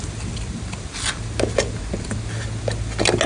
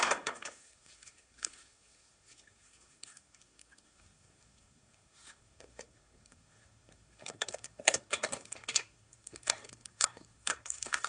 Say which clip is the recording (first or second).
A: first